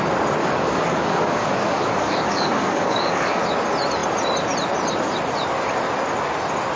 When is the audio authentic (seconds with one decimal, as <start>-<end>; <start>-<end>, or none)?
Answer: 0.0-0.4; 3.4-6.8